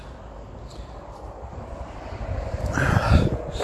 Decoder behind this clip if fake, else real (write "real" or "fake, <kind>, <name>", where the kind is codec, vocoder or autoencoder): real